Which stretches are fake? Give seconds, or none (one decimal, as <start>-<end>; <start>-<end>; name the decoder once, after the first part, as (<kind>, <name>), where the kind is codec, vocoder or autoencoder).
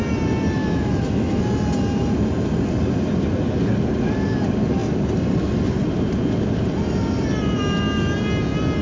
0.6-1.4 (autoencoder, DAC-VAE)